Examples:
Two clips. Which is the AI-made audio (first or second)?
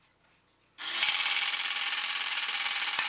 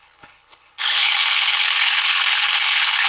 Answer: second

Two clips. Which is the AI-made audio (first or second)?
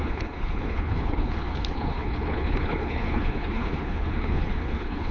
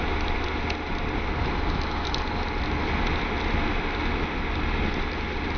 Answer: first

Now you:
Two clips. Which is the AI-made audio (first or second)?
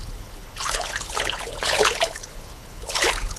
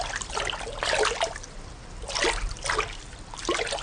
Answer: first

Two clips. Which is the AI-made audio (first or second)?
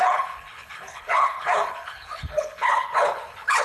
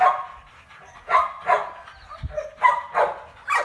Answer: first